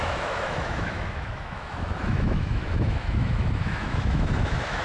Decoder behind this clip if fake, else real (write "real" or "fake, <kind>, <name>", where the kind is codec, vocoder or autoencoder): fake, autoencoder, DAC-VAE